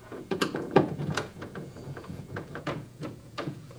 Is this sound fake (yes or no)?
yes